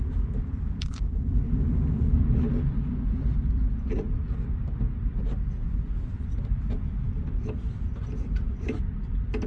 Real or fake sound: fake